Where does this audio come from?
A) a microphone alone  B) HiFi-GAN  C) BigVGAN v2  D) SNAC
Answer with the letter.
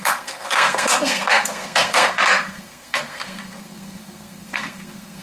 D